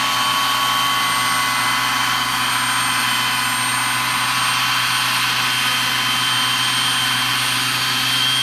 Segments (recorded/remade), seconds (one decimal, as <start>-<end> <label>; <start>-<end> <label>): 0.0-8.4 recorded